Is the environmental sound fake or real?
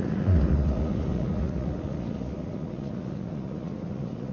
fake